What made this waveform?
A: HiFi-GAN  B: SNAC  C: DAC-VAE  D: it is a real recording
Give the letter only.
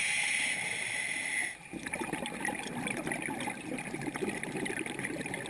D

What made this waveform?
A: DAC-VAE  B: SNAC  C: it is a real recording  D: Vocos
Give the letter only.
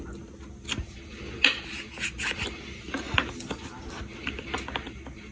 C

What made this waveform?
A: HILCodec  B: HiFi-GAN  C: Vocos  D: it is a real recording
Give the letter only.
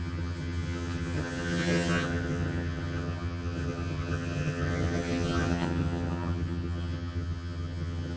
B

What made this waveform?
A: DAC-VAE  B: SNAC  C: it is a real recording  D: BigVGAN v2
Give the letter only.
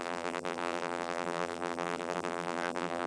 D